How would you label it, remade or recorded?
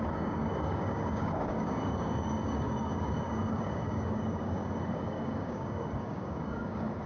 remade